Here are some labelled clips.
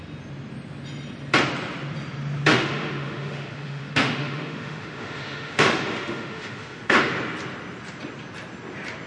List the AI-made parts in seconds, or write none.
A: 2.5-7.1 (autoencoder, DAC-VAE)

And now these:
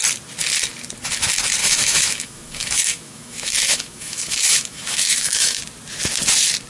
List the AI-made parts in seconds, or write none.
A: 1.6-5.6 (autoencoder, DAC-VAE)

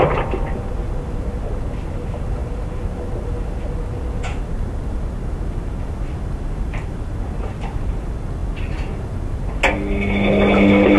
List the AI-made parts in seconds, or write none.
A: none

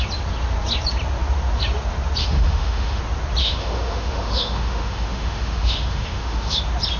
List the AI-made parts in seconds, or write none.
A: 2.2-3.0 (autoencoder, DAC-VAE); 3.4-6.6